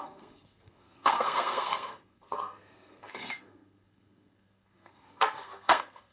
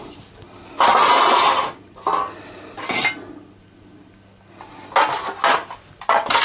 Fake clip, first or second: first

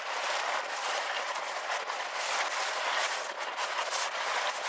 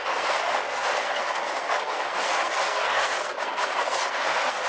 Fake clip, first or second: second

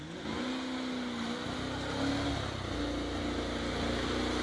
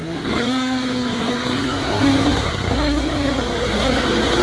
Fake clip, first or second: second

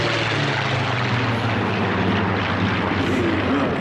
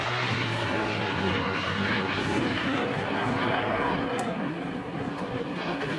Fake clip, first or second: second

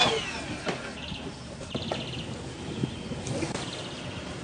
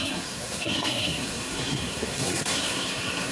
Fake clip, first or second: second